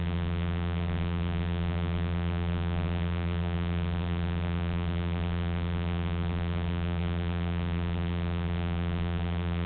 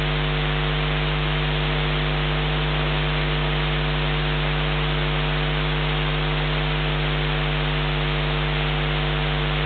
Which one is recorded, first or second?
second